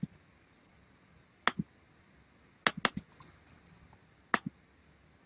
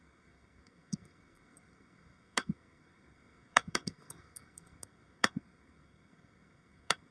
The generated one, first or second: second